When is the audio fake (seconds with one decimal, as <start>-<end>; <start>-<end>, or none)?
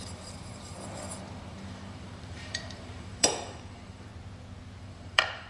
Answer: 0.0-4.1; 4.8-5.5